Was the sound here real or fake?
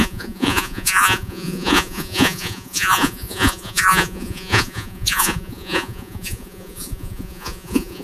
fake